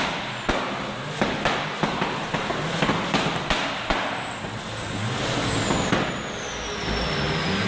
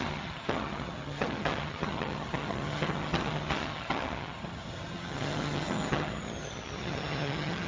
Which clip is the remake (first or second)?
second